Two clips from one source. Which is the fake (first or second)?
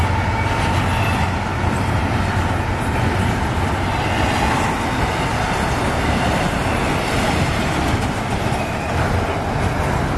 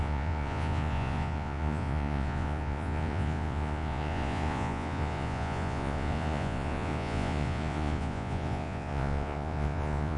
second